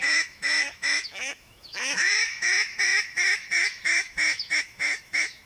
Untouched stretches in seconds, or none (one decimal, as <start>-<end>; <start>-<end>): none